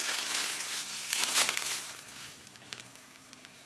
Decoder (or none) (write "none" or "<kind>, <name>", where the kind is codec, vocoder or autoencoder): codec, SNAC